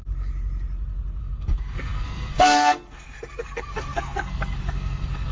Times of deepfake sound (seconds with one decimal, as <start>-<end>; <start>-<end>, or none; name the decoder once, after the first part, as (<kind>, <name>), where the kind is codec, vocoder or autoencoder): 1.2-5.3 (codec, SNAC)